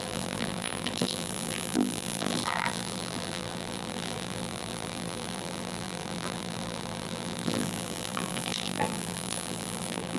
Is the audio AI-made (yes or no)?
yes